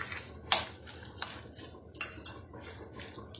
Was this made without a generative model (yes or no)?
yes